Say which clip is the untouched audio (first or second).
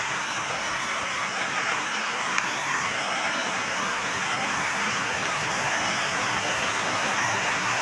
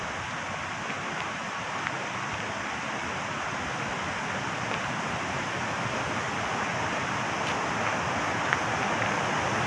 second